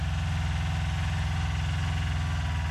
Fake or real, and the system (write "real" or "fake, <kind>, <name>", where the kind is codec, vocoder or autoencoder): real